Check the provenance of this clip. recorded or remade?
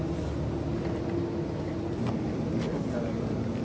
recorded